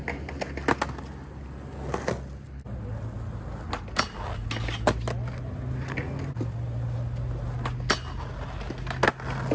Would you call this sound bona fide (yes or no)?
yes